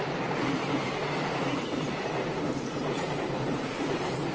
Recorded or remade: remade